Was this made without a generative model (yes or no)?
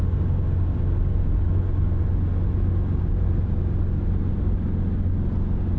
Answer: yes